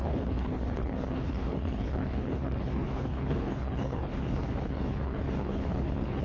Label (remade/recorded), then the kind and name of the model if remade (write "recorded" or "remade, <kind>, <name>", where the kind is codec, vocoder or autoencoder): remade, codec, HILCodec